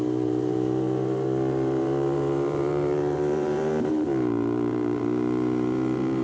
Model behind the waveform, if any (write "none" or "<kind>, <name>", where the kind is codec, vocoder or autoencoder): vocoder, BigVGAN v2